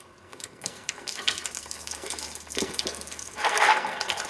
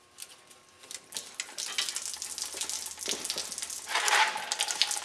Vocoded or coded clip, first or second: first